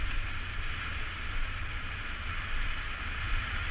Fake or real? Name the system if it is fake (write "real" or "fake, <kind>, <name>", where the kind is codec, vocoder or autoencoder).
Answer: real